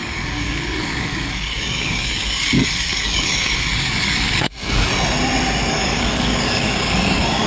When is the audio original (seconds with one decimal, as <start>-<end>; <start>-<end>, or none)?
4.9-5.7